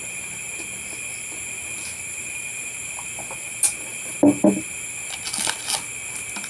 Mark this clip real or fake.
real